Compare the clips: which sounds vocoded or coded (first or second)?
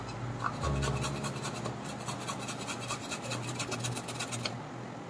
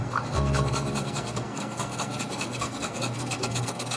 second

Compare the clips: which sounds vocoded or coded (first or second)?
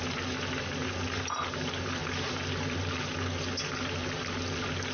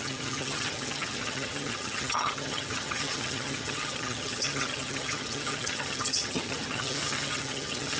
second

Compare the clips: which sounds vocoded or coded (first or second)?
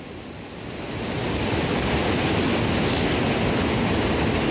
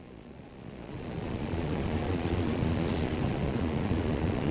second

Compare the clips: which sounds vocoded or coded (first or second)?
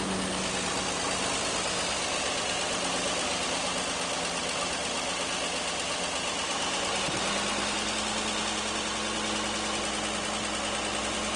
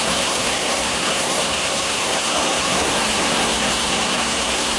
second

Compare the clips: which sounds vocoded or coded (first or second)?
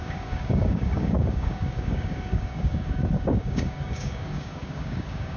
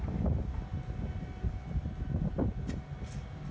first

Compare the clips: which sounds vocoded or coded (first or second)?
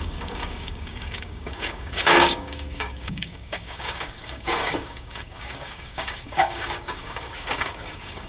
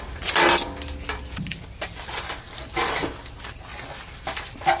first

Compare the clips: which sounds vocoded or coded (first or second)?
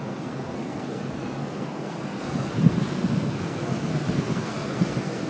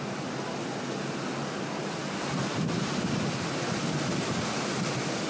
first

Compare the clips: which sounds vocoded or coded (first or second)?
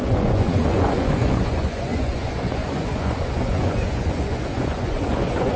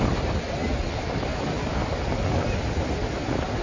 first